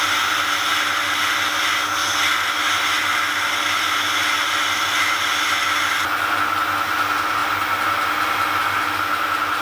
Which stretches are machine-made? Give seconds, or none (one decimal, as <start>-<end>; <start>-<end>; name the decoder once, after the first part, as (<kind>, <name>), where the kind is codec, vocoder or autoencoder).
none